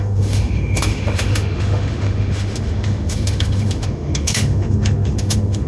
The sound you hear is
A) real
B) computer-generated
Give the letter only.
B